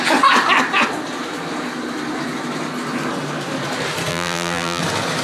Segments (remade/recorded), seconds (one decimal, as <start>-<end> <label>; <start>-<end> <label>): 0.0-4.1 recorded; 4.1-4.8 remade; 4.8-5.2 recorded